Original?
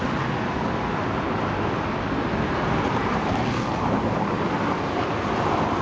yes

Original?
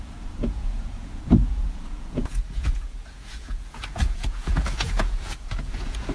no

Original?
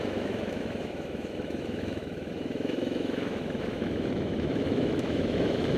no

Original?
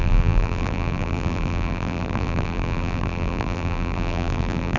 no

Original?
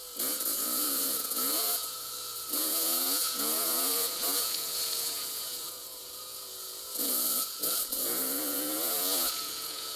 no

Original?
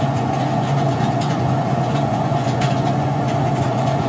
no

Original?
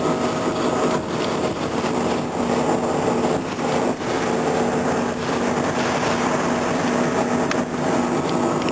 yes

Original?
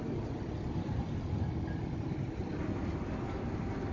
yes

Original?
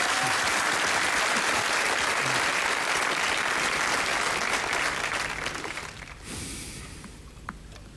yes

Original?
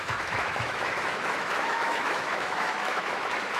no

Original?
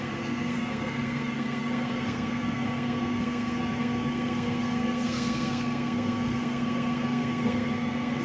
no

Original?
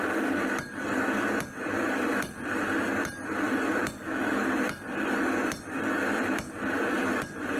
no